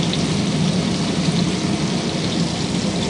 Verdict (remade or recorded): recorded